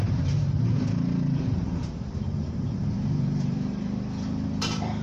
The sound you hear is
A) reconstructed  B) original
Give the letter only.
A